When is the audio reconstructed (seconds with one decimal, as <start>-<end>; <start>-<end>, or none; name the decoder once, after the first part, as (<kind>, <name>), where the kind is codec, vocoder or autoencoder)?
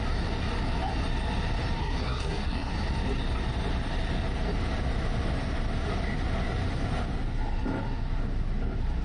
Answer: 1.8-2.7 (codec, SNAC)